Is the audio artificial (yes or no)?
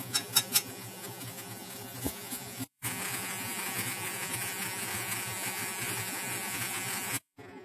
yes